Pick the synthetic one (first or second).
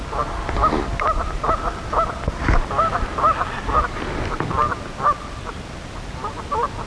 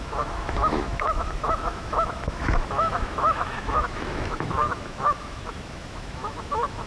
second